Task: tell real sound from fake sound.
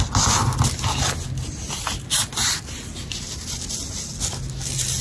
real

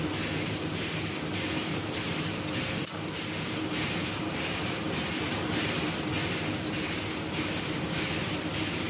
real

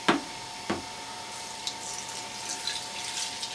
real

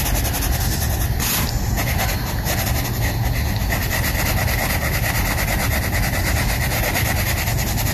real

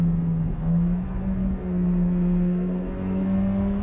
fake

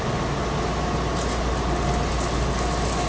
real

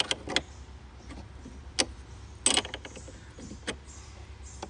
real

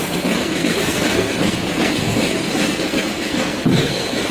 fake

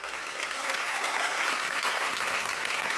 fake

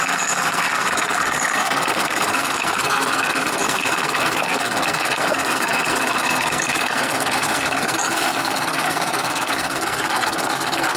fake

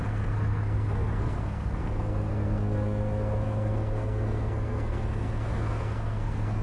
fake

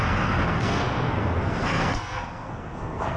fake